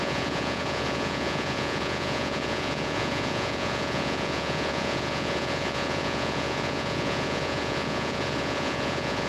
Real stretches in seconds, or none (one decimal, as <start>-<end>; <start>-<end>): none